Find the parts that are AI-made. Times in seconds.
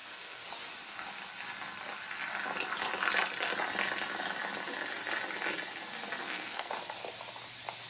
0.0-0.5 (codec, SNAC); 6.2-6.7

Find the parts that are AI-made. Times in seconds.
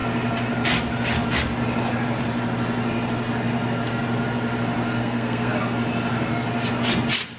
5.0-5.5 (codec, SNAC)